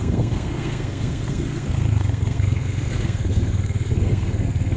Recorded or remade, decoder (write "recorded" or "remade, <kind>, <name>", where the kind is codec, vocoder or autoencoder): remade, codec, SNAC